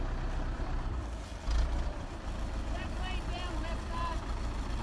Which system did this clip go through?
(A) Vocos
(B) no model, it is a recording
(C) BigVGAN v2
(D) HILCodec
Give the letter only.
C